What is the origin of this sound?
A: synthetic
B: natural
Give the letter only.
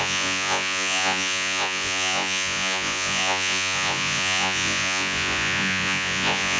A